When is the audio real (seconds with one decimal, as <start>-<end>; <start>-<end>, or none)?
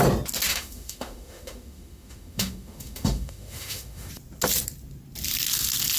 0.0-0.5; 4.1-6.0